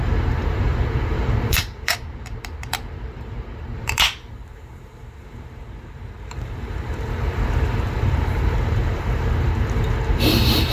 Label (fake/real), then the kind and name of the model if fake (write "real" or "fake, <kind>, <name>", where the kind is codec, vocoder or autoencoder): fake, vocoder, BigVGAN v2